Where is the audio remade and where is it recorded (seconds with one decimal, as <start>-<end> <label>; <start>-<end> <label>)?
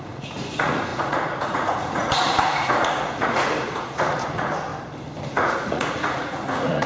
0.0-4.7 remade; 4.7-5.3 recorded; 5.3-6.9 remade